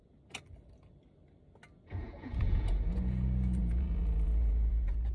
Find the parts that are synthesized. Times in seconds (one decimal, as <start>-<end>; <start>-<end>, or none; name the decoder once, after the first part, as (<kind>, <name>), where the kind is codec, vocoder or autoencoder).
2.0-5.1 (vocoder, Vocos)